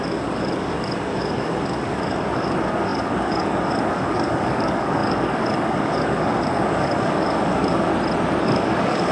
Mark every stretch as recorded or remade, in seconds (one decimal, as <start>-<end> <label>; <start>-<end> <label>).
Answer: 0.0-7.9 remade; 7.9-8.4 recorded; 8.4-9.1 remade